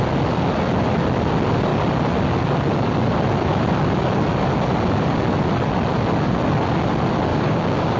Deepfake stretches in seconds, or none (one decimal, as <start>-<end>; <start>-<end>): 7.3-8.0